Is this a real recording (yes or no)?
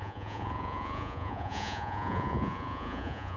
no